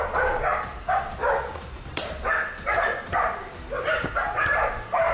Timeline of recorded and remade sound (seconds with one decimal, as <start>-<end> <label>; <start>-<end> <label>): 0.0-1.2 recorded; 1.2-3.8 remade; 3.8-5.1 recorded